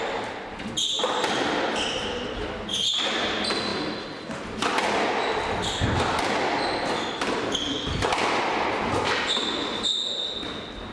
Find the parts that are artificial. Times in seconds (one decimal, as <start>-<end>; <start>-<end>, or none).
none